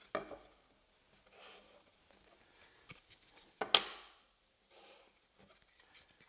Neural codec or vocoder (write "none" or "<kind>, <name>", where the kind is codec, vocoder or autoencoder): none